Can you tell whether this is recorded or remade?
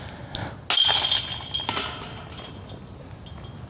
recorded